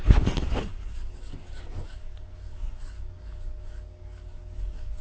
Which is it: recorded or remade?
remade